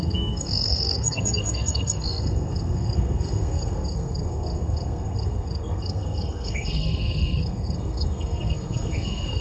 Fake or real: fake